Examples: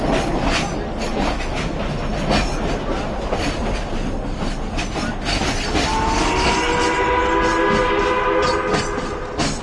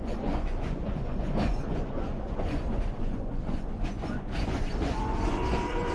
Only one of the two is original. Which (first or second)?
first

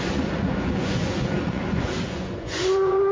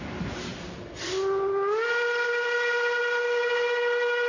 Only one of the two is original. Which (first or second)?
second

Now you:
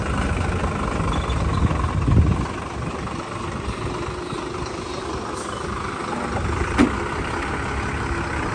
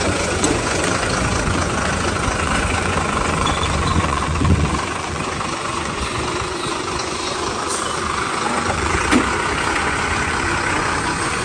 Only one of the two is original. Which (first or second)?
first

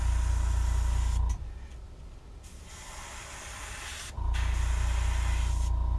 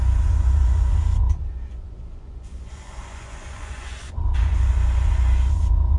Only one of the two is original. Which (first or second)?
first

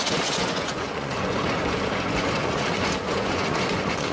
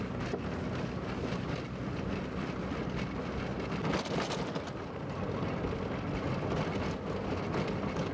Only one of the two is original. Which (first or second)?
second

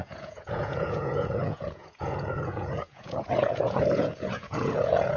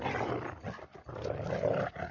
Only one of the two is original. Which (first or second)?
second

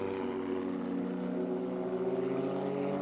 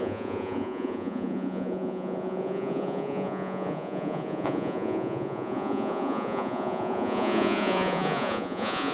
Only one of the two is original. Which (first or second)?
first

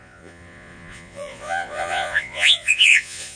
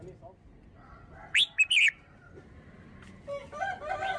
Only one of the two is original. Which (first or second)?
second